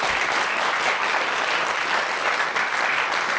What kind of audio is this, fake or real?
real